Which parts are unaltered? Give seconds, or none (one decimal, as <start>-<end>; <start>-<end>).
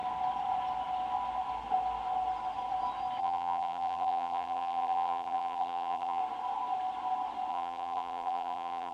0.0-3.2; 6.2-7.5